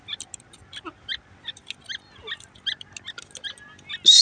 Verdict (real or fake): real